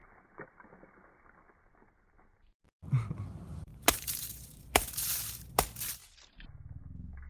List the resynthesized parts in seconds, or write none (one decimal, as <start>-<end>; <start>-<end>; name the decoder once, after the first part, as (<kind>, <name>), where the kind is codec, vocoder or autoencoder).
3.2-6.0 (vocoder, BigVGAN v2)